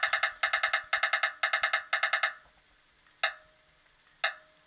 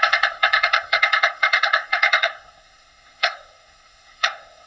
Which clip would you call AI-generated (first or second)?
second